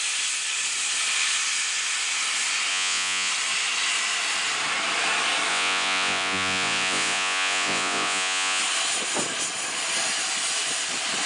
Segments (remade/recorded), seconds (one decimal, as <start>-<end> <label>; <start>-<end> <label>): 0.0-2.7 recorded; 2.7-3.3 remade; 3.3-5.5 recorded; 5.5-8.6 remade; 8.6-11.3 recorded